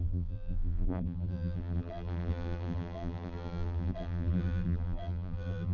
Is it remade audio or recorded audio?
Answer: remade